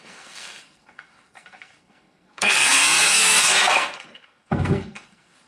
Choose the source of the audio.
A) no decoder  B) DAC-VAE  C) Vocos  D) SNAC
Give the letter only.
D